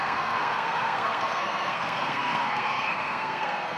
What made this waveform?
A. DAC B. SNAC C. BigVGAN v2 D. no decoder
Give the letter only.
B